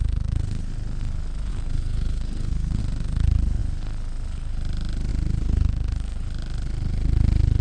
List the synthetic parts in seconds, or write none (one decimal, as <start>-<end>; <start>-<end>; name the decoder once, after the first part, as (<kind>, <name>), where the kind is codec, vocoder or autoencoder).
1.5-2.8 (codec, SNAC)